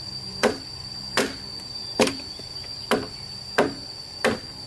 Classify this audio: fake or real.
fake